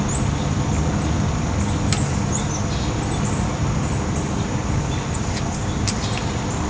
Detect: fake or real real